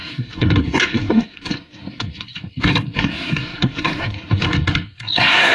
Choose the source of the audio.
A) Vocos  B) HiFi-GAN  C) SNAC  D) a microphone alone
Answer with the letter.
C